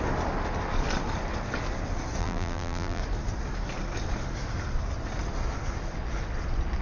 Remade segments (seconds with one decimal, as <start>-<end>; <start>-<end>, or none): 2.2-3.0